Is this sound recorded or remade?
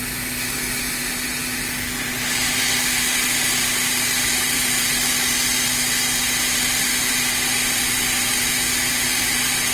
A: recorded